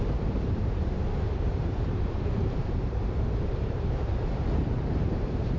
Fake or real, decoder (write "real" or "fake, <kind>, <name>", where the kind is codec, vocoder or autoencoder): fake, vocoder, BigVGAN v2